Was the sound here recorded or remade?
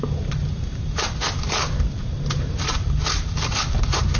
remade